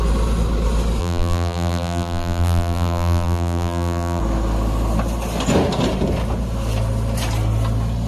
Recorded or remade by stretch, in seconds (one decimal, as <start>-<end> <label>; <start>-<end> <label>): 0.0-1.0 recorded; 1.0-4.2 remade; 4.2-8.1 recorded